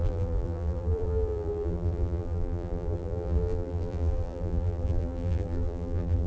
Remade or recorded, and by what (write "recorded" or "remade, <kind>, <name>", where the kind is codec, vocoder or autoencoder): remade, vocoder, BigVGAN v2